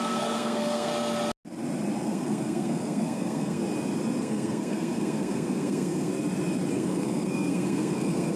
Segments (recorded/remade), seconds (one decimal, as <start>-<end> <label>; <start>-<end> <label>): 0.0-0.9 remade; 0.9-2.0 recorded; 2.0-3.6 remade; 3.6-4.2 recorded; 4.2-6.1 remade; 6.1-6.7 recorded; 6.7-8.4 remade